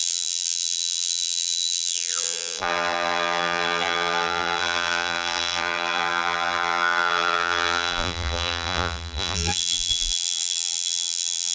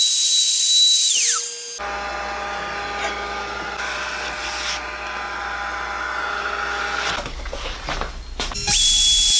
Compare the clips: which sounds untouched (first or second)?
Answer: second